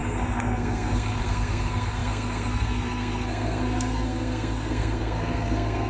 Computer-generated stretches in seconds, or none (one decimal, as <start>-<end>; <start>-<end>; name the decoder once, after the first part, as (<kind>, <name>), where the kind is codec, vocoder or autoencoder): 0.0-5.9 (codec, SNAC)